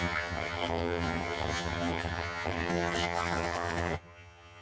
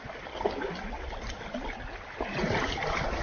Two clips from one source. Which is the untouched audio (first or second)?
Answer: second